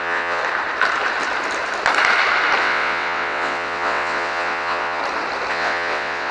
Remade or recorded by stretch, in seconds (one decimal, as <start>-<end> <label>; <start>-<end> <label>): 0.0-0.4 remade; 0.4-2.6 recorded; 2.6-5.0 remade; 5.0-5.5 recorded; 5.5-6.3 remade